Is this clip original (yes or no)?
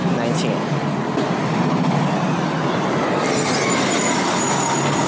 yes